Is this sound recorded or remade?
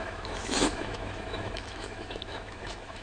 remade